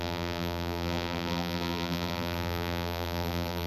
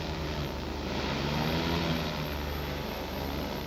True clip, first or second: second